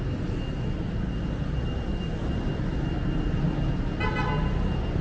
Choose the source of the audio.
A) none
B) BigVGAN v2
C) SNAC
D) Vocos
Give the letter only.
A